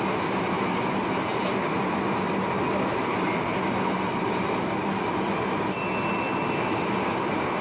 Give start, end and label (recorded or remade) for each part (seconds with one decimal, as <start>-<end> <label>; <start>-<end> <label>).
0.0-7.6 recorded